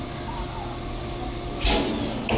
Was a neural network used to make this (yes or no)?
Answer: no